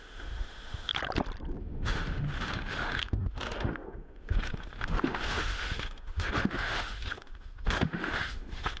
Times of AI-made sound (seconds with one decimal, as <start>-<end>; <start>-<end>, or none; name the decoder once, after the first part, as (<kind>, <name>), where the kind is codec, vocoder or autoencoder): 0.0-0.9 (autoencoder, DAC-VAE); 1.6-8.8